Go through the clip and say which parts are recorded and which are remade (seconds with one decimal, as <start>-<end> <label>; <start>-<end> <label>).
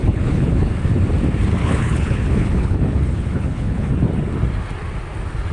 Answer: 0.0-0.7 remade; 0.7-1.6 recorded; 1.6-3.9 remade; 3.9-5.5 recorded